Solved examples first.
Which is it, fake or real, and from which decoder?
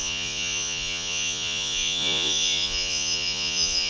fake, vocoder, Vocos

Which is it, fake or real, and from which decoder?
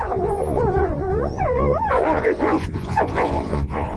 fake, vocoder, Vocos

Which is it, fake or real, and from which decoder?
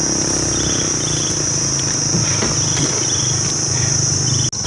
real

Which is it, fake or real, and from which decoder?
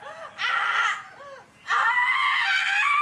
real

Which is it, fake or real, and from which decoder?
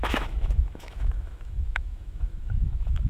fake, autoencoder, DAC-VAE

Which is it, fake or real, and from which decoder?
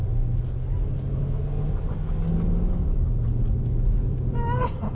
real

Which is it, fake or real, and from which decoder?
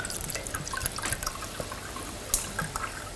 real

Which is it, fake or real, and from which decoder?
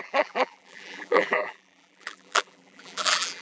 fake, vocoder, BigVGAN v2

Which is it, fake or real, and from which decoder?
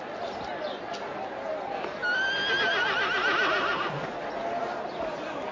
real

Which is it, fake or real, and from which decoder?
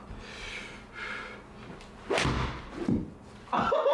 real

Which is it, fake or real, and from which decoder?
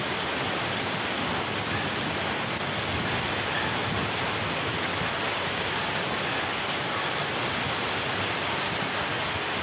real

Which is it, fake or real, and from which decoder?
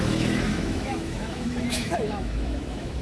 fake, autoencoder, DAC-VAE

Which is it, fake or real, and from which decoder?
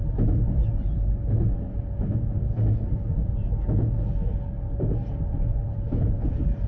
real